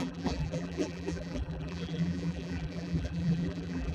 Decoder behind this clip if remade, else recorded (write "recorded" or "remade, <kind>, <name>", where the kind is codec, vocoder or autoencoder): remade, vocoder, BigVGAN v2